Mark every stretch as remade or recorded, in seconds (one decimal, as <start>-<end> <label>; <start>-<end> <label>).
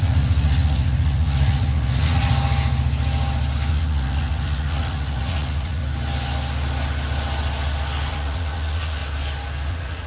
0.0-2.3 remade; 2.3-3.7 recorded; 3.7-5.8 remade; 5.8-8.1 recorded; 8.1-9.0 remade; 9.0-9.7 recorded; 9.7-10.1 remade